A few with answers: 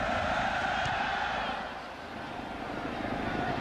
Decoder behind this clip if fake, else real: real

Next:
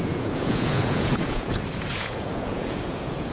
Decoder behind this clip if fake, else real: fake, vocoder, Vocos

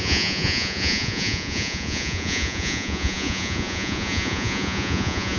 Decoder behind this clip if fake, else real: fake, vocoder, Vocos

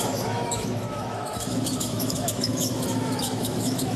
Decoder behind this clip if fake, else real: fake, autoencoder, DAC-VAE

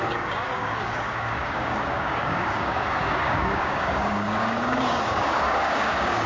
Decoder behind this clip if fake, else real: fake, codec, DAC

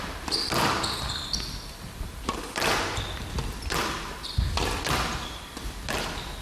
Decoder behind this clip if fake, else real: fake, vocoder, BigVGAN v2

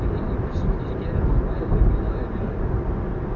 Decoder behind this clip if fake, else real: real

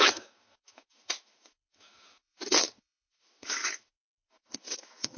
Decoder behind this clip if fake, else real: fake, autoencoder, DAC-VAE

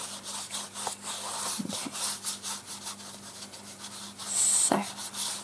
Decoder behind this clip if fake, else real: real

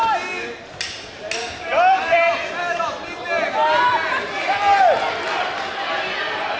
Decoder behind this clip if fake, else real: real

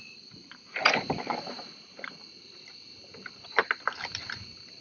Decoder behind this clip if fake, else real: fake, vocoder, BigVGAN v2